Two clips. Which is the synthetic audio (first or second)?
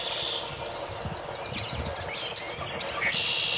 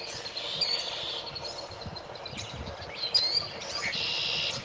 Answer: second